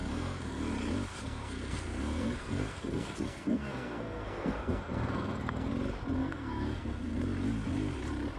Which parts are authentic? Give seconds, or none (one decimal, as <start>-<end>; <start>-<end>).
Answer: 0.7-1.1; 5.7-6.2; 7.2-8.4